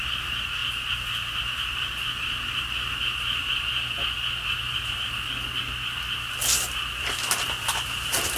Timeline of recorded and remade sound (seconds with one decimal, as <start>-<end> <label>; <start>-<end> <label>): 0.0-3.5 remade; 3.5-7.0 recorded; 7.0-8.4 remade